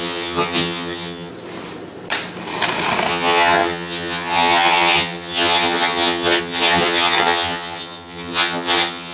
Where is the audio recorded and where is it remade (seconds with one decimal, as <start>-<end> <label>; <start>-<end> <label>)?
0.0-1.3 remade; 1.3-3.1 recorded; 3.1-9.1 remade